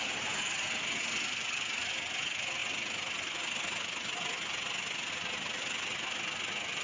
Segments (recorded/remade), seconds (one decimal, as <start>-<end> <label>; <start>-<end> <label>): 0.0-6.8 recorded